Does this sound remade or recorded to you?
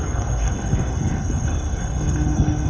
remade